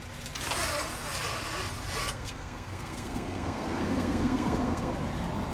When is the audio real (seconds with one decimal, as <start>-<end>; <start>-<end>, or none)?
0.0-2.0; 4.9-5.5